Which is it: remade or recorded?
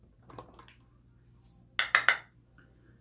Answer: recorded